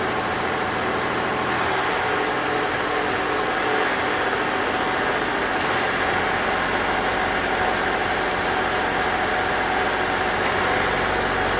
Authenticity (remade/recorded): recorded